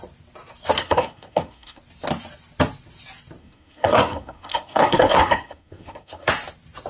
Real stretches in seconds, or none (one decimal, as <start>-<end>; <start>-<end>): 0.0-0.8; 1.8-3.4; 6.3-6.9